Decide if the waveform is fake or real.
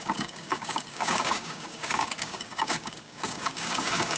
fake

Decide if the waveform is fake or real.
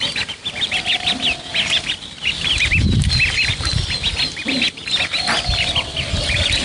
real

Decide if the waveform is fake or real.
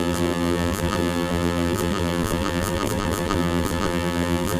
fake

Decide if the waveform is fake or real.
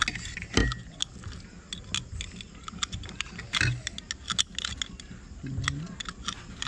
real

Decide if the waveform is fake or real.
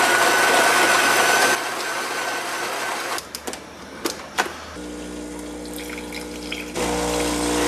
real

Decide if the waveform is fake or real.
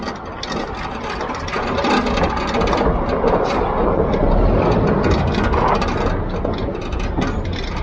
real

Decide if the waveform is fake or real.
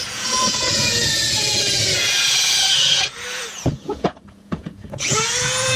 fake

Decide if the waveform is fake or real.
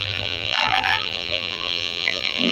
fake